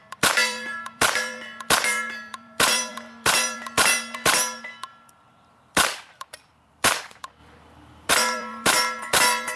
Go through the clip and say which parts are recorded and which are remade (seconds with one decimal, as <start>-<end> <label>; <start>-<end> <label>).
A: 0.0-9.6 remade